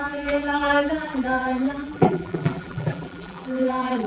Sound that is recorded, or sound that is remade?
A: remade